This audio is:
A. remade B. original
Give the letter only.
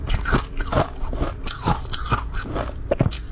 B